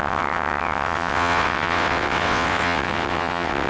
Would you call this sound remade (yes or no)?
yes